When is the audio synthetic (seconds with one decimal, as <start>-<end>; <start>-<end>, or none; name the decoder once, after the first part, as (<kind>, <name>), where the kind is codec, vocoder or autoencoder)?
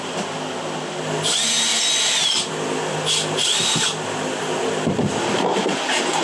none